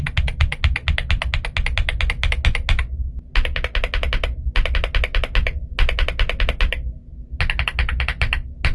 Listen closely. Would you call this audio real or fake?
real